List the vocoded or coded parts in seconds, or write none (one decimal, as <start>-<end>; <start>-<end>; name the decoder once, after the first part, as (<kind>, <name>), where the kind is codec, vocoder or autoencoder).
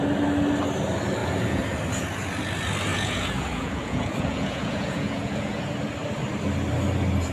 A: 1.2-1.8 (vocoder, Vocos); 2.9-5.6